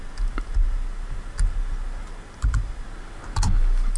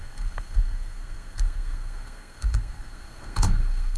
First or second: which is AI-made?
second